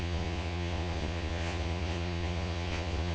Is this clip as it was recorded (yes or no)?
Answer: no